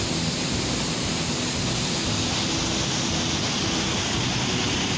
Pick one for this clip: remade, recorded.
recorded